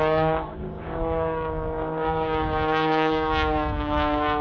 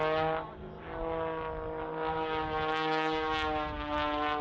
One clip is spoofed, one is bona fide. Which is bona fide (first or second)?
second